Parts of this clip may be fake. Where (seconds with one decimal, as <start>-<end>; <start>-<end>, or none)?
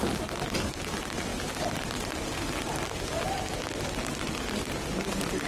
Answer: none